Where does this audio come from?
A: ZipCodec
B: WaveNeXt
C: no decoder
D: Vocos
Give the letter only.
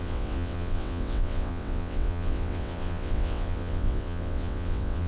B